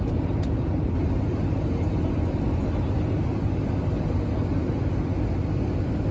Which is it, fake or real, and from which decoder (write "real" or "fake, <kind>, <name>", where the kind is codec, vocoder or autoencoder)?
real